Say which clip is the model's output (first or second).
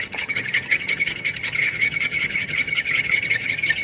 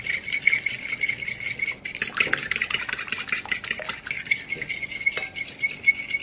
first